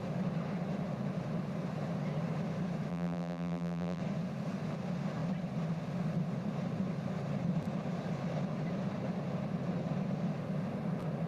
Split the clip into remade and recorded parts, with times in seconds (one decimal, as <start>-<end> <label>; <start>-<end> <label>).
0.0-2.9 recorded; 2.9-4.0 remade; 4.0-11.3 recorded